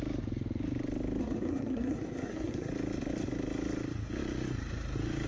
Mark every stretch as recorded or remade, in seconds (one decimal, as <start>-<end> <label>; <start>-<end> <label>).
0.0-1.2 recorded; 1.2-2.7 remade; 2.7-5.3 recorded